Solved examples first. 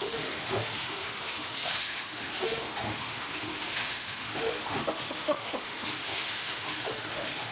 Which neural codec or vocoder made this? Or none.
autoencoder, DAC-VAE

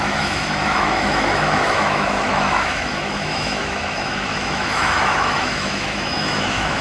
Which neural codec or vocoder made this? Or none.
autoencoder, DAC-VAE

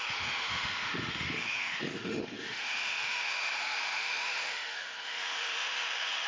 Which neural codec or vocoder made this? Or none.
autoencoder, DAC-VAE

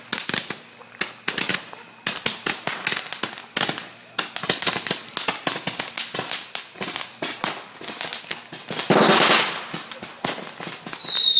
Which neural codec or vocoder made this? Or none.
none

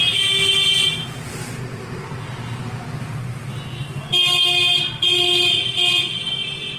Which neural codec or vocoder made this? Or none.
none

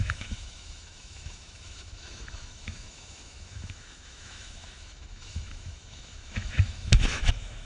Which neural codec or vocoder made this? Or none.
autoencoder, DAC-VAE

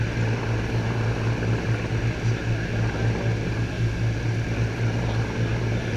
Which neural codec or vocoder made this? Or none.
none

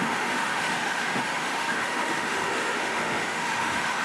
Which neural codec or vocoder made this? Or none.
autoencoder, DAC-VAE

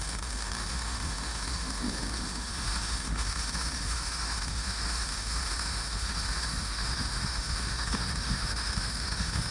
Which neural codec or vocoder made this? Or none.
autoencoder, DAC-VAE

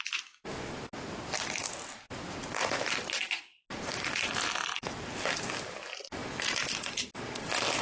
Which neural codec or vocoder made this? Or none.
none